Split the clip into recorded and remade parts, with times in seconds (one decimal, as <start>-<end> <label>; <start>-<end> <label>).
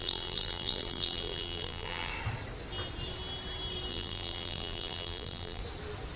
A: 0.0-2.1 remade; 2.1-3.9 recorded; 3.9-5.6 remade; 5.6-6.2 recorded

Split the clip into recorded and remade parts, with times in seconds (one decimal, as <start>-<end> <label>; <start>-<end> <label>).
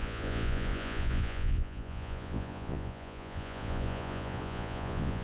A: 0.0-5.2 remade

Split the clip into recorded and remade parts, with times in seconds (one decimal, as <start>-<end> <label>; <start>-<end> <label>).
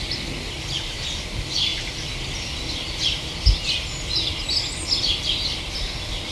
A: 0.0-6.3 recorded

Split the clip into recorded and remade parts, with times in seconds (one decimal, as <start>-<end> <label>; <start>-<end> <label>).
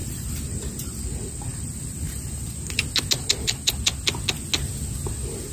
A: 0.0-1.0 remade; 1.0-5.5 recorded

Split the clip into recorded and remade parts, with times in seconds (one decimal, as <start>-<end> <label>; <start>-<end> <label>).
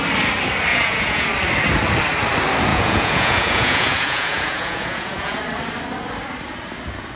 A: 0.0-0.7 recorded; 0.7-1.3 remade; 1.3-2.7 recorded; 2.7-5.4 remade; 5.4-7.2 recorded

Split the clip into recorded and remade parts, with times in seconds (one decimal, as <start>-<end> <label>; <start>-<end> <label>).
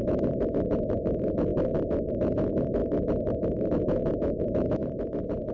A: 0.0-1.5 remade; 1.5-2.1 recorded; 2.1-2.8 remade; 2.8-3.7 recorded; 3.7-5.5 remade